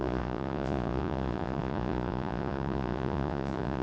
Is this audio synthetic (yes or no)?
yes